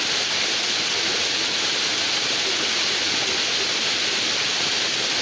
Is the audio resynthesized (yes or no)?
no